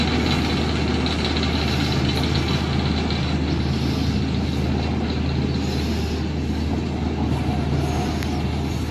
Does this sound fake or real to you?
real